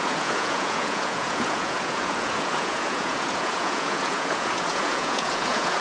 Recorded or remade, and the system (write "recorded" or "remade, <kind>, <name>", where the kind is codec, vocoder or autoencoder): remade, vocoder, Vocos